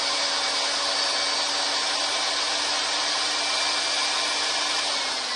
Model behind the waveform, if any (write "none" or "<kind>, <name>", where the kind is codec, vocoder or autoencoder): none